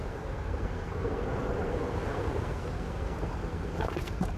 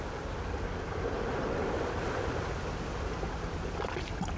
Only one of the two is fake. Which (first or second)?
first